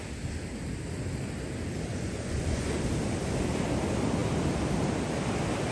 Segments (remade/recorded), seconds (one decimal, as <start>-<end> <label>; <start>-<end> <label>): 0.0-1.9 recorded; 1.9-2.8 remade; 2.8-5.7 recorded